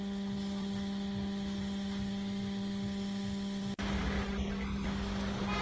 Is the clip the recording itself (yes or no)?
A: yes